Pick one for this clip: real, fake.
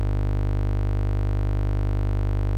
real